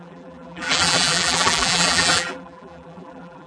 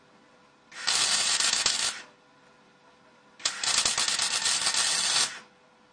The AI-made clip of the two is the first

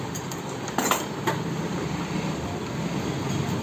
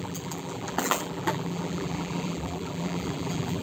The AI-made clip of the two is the second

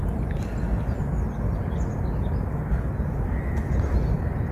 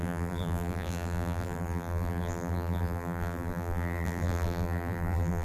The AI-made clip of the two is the second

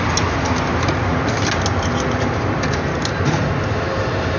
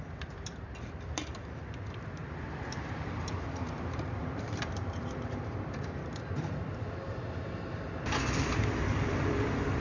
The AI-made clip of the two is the second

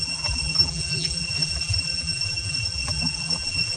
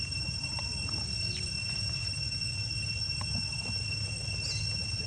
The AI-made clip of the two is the first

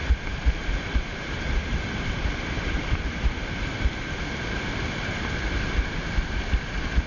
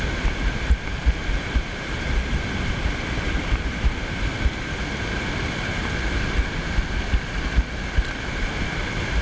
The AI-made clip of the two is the first